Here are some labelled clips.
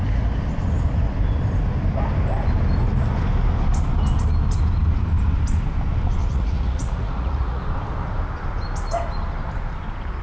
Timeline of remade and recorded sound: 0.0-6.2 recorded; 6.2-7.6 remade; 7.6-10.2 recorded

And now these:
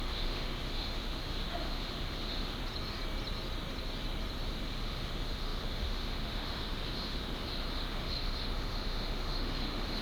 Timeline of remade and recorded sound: 0.0-2.6 remade; 2.6-4.6 recorded; 4.6-10.0 remade

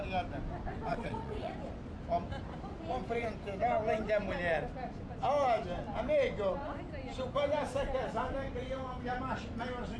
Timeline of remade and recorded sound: 0.0-0.9 recorded; 0.9-1.5 remade; 1.5-10.0 recorded